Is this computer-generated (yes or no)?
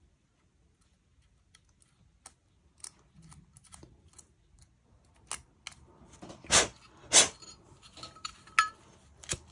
no